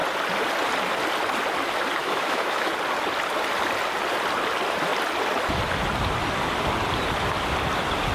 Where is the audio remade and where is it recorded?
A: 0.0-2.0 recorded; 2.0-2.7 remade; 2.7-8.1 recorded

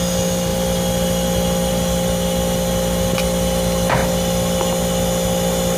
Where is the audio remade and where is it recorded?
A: 0.0-5.8 recorded

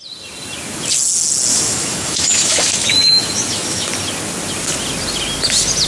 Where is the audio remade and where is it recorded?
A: 0.0-1.5 recorded; 1.5-3.9 remade; 3.9-5.9 recorded